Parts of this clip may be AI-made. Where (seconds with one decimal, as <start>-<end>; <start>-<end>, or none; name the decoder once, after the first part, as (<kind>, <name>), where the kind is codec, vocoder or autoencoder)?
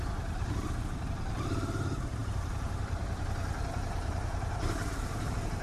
0.0-5.6 (vocoder, BigVGAN v2)